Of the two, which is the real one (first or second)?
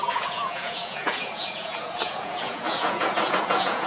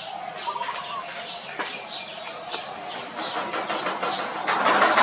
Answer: second